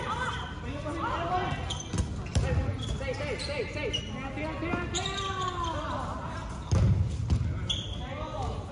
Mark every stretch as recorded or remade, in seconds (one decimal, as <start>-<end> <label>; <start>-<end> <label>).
0.0-8.7 recorded